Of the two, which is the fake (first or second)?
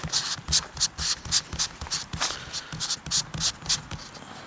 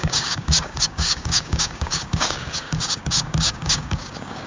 second